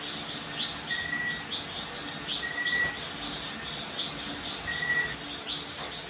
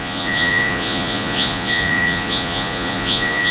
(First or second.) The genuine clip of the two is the first